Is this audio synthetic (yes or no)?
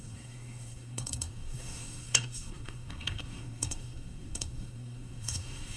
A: yes